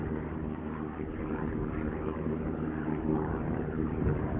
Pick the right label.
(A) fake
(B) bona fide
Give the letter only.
A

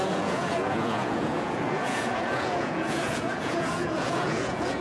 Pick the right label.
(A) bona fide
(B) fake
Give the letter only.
B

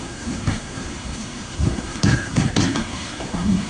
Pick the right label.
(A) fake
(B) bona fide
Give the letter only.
A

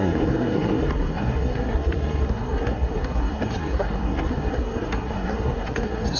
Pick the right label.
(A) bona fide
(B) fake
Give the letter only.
B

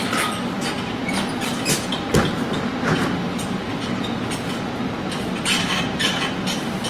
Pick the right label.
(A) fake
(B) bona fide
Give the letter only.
B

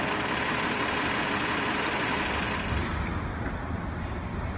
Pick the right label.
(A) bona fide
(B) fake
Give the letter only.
A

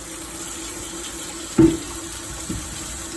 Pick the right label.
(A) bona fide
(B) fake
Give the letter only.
A